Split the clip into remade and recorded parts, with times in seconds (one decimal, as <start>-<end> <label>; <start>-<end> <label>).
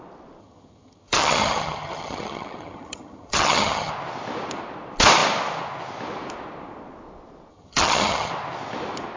0.0-0.4 recorded; 0.4-3.9 remade; 3.9-7.5 recorded; 7.5-8.3 remade; 8.3-9.2 recorded